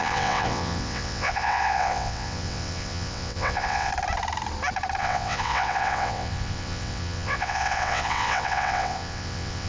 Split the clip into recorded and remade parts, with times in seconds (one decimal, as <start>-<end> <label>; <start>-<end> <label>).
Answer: 0.0-3.9 remade; 3.9-5.0 recorded; 5.0-9.7 remade